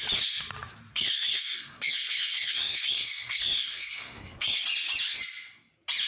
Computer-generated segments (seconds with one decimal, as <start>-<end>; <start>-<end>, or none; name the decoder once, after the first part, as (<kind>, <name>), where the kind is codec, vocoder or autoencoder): 0.9-4.6 (codec, SNAC)